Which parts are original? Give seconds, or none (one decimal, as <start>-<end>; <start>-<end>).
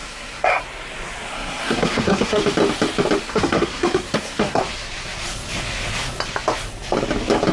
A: 0.6-1.3; 2.4-3.2; 4.6-7.5